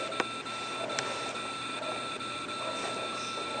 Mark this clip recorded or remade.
recorded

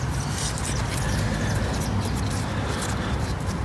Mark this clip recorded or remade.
recorded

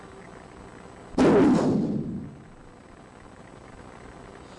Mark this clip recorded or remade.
recorded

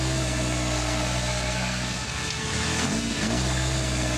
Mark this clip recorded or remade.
remade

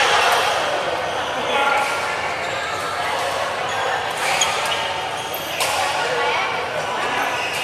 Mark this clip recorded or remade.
recorded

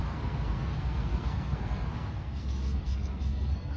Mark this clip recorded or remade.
remade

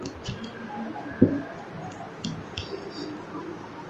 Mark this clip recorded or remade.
recorded